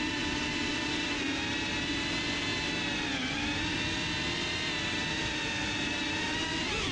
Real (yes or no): yes